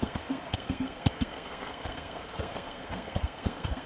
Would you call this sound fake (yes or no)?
yes